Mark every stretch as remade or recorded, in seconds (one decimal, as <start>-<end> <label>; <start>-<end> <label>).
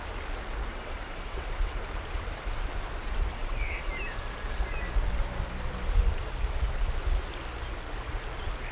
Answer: 0.0-0.7 recorded; 0.7-1.8 remade; 1.8-3.3 recorded; 3.3-3.9 remade; 3.9-8.7 recorded